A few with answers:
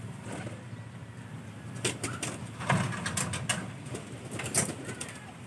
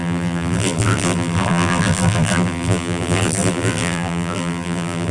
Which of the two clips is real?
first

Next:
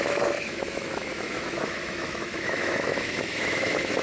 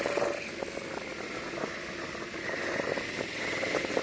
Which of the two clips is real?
second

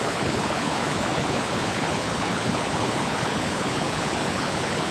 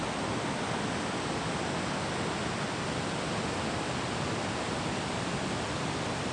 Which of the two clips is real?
second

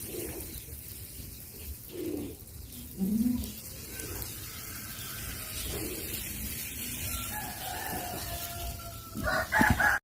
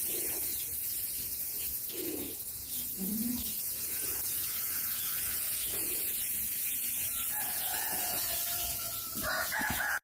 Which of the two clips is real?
first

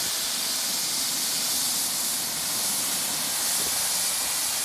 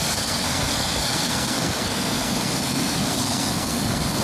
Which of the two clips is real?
first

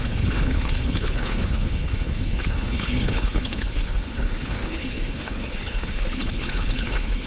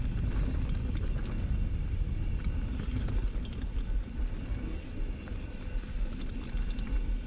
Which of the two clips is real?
second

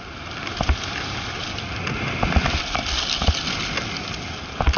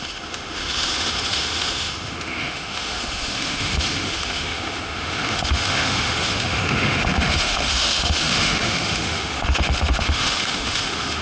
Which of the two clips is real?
first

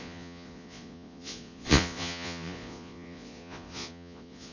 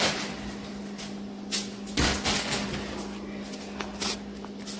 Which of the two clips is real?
second